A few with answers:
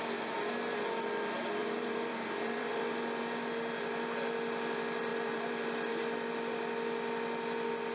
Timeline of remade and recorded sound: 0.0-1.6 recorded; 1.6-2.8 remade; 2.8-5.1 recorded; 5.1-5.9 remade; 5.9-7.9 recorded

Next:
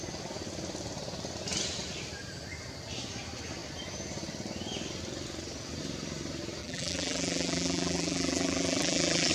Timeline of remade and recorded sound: 0.0-6.6 recorded; 6.6-9.3 remade

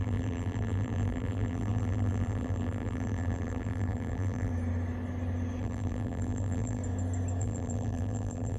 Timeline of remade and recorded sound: 0.0-4.5 remade; 4.5-5.6 recorded; 5.6-6.8 remade; 6.8-7.4 recorded; 7.4-8.6 remade

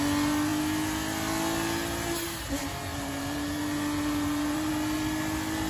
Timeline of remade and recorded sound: 0.0-2.9 recorded; 2.9-4.7 remade; 4.7-5.7 recorded

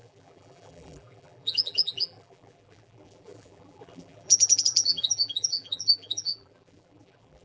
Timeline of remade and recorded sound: 0.0-7.4 remade